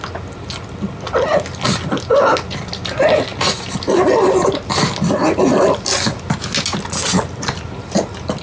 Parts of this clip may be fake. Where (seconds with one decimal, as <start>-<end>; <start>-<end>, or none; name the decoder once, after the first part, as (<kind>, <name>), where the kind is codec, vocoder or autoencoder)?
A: none